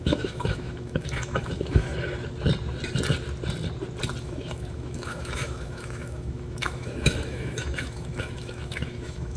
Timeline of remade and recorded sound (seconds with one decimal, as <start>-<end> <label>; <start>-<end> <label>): 0.0-1.9 remade; 1.9-4.2 recorded; 4.2-9.4 remade